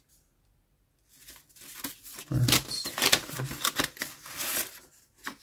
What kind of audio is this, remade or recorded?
recorded